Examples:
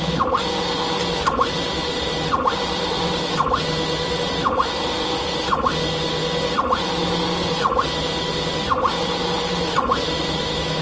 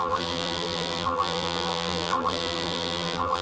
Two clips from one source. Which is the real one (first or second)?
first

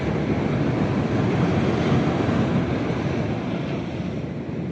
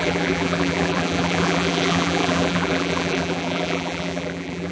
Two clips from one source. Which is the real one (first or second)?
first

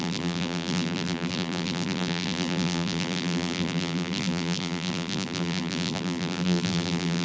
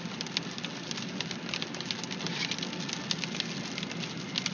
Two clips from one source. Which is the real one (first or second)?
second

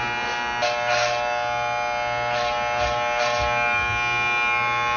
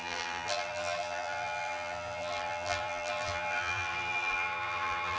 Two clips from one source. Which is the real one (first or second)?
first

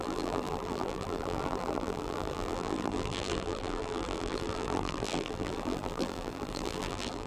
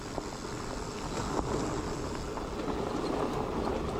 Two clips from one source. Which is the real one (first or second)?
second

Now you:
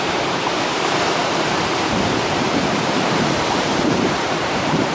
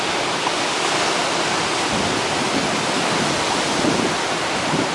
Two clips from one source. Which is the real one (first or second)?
second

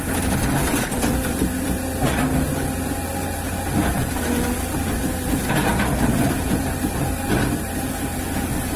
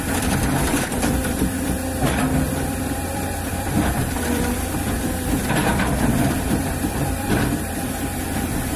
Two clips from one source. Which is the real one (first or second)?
first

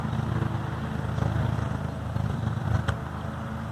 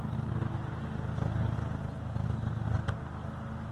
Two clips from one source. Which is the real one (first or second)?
second